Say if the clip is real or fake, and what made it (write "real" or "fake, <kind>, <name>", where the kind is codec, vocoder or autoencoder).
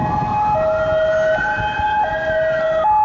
real